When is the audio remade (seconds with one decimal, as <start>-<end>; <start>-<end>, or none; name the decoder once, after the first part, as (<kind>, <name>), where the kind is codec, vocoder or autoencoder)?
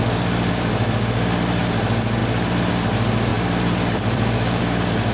0.0-0.5 (vocoder, BigVGAN v2); 3.3-4.6